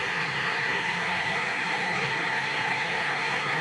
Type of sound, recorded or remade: remade